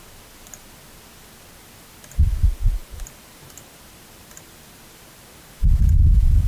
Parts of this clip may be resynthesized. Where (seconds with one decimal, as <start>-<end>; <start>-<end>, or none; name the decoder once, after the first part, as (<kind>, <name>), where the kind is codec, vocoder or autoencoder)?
none